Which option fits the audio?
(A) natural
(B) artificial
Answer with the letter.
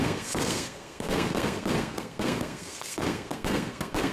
B